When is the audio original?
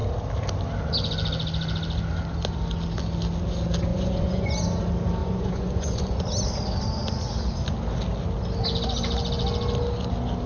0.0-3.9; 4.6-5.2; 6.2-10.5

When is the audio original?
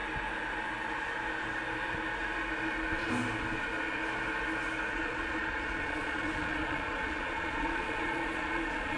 0.0-4.9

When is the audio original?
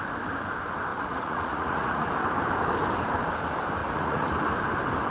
0.0-0.9; 2.1-3.8; 4.3-5.1